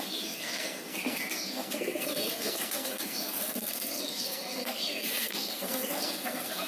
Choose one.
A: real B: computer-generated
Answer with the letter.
B